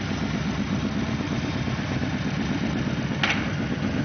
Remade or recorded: recorded